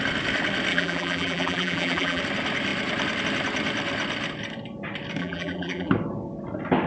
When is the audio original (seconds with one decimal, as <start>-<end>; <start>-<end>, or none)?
0.0-0.7; 2.2-5.2; 5.9-6.9